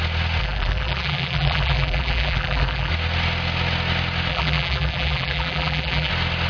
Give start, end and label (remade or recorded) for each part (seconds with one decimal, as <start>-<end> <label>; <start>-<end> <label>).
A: 0.0-0.4 recorded; 0.4-2.9 remade; 2.9-4.3 recorded; 4.3-6.1 remade; 6.1-6.5 recorded